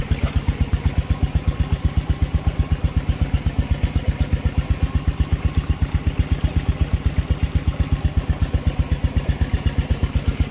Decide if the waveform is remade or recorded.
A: recorded